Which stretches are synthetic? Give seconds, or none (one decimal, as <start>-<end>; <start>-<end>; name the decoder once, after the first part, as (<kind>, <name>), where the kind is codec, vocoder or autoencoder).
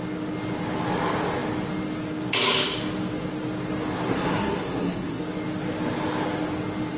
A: 4.1-5.2 (codec, SNAC)